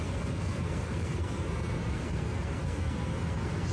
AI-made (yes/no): yes